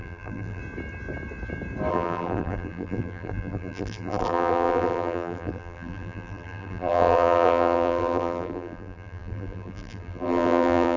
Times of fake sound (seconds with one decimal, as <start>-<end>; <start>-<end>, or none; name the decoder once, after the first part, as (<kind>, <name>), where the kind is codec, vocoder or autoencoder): 0.0-0.6 (vocoder, BigVGAN v2); 1.9-11.0